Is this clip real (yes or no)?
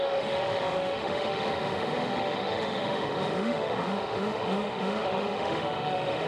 no